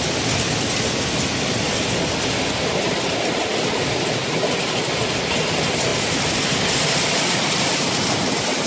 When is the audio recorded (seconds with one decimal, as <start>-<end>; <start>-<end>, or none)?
0.0-8.7